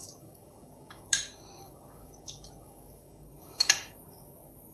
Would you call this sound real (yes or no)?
no